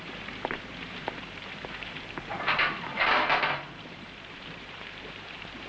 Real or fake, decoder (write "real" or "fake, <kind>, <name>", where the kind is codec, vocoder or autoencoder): fake, vocoder, BigVGAN v2